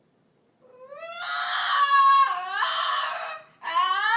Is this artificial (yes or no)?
no